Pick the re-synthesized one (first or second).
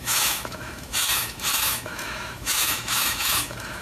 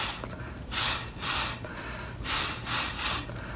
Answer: first